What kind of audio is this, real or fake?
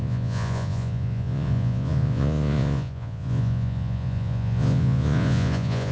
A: fake